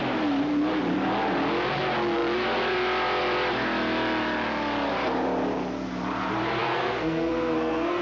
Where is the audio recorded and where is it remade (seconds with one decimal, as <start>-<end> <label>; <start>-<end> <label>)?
0.0-6.6 recorded; 6.6-8.0 remade